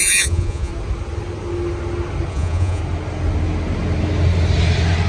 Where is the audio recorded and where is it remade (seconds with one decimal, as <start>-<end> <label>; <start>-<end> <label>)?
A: 0.0-0.7 remade; 0.7-2.3 recorded; 2.3-2.8 remade; 2.8-5.1 recorded